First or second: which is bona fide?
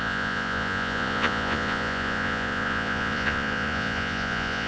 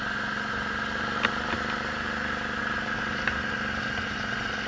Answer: second